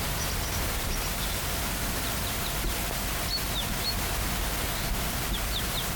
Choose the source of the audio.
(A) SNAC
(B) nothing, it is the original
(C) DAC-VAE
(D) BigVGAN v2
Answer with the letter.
D